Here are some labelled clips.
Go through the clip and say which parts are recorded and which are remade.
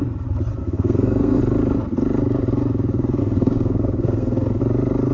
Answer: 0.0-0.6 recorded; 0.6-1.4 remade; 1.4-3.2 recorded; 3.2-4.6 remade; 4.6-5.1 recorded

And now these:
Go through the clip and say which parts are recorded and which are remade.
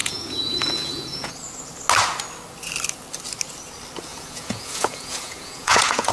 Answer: 0.0-1.3 remade; 1.3-4.1 recorded; 4.1-6.1 remade